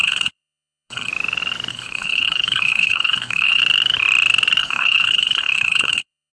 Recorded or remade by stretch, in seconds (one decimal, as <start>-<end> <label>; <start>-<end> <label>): 0.0-1.1 remade; 1.1-1.7 recorded; 1.7-3.6 remade; 3.6-4.6 recorded; 4.6-6.3 remade